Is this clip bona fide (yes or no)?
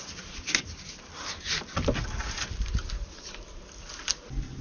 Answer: yes